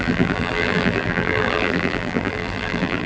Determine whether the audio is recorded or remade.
remade